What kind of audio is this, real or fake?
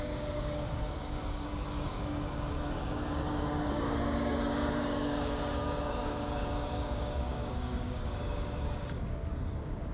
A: fake